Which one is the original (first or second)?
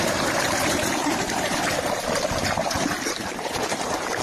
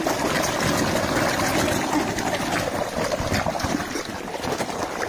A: second